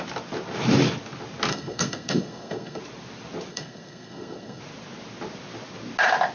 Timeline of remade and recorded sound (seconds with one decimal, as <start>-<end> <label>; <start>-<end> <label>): 0.0-1.5 recorded; 1.5-2.8 remade; 2.8-3.5 recorded; 3.5-4.6 remade; 4.6-6.3 recorded

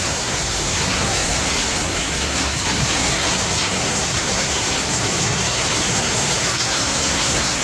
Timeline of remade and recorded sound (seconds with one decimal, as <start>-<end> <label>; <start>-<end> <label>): 0.0-7.6 remade

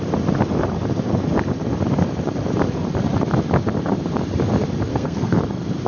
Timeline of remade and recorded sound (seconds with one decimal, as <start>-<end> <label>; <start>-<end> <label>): 0.0-4.9 recorded; 4.9-5.4 remade; 5.4-5.9 recorded

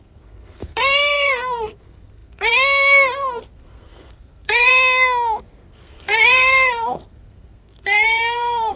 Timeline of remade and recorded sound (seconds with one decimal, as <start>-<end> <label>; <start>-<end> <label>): 0.0-4.7 remade; 4.7-5.4 recorded; 5.4-8.8 remade

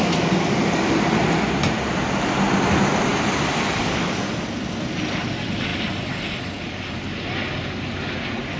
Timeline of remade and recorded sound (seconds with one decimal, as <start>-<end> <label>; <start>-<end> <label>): 0.0-8.6 recorded

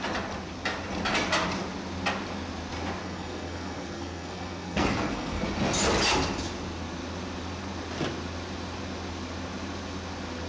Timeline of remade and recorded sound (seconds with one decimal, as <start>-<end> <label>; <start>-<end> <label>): 0.0-3.0 recorded; 3.0-5.4 remade; 5.4-10.5 recorded

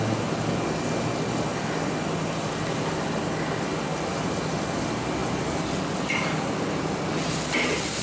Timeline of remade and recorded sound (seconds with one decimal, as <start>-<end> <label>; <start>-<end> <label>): 0.0-8.0 recorded

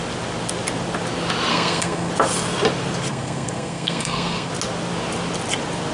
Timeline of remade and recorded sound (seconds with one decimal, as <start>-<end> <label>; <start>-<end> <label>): 0.0-1.5 recorded; 1.5-2.1 remade; 2.1-3.1 recorded; 3.1-4.5 remade; 4.5-5.9 recorded